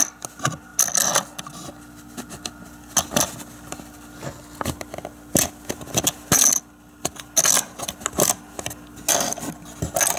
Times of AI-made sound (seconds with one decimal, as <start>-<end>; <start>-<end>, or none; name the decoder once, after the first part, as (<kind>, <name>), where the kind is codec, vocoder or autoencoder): none